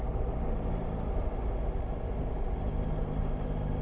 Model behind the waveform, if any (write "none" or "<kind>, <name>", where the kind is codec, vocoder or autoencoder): none